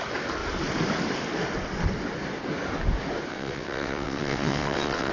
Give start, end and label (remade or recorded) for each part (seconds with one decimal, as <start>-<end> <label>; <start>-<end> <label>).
0.0-3.3 recorded; 3.3-5.1 remade